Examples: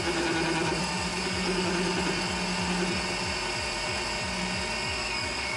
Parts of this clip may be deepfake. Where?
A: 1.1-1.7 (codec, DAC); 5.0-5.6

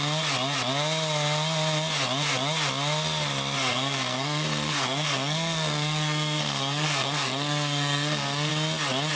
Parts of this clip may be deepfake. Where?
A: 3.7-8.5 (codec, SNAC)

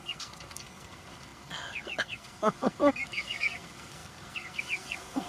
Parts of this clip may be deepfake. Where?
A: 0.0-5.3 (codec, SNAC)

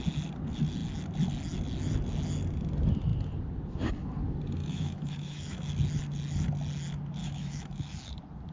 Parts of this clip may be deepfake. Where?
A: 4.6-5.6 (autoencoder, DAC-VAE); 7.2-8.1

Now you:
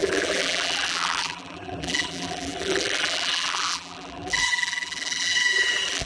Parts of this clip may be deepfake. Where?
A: 0.0-6.1 (vocoder, BigVGAN v2)